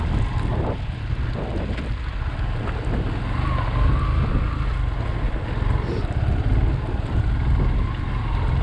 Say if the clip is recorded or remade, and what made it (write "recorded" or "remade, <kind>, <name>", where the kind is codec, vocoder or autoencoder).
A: recorded